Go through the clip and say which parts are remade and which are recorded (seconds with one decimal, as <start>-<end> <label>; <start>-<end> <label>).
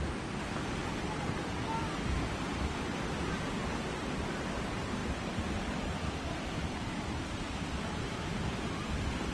0.0-9.3 recorded